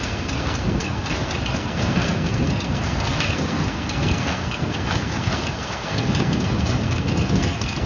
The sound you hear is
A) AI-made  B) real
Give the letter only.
A